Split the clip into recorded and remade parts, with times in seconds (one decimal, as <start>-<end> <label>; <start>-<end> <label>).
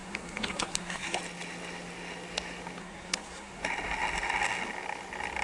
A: 0.0-1.2 remade; 1.2-2.8 recorded; 2.8-3.6 remade; 3.6-5.4 recorded